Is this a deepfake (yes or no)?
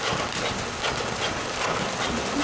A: no